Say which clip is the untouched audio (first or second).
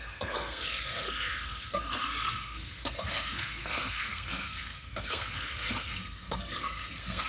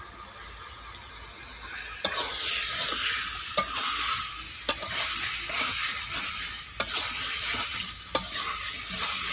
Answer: second